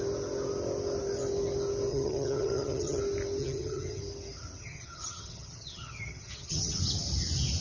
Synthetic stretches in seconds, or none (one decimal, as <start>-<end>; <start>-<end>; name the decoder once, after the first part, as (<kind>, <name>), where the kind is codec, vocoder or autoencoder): 1.9-3.0 (vocoder, HiFi-GAN); 3.4-4.0; 4.6-6.8